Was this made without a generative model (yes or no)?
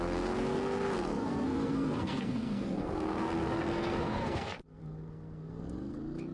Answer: no